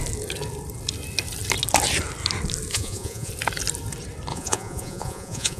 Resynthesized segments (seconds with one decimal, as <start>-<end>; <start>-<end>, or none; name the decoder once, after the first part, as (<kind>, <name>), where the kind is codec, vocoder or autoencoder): 2.7-3.3 (vocoder, Vocos); 4.3-5.6